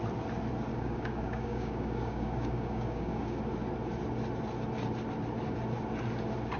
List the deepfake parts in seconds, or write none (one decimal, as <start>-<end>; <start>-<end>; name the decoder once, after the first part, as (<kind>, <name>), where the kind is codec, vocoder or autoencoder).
0.7-3.4 (codec, DAC)